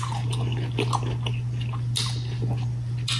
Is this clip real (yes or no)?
yes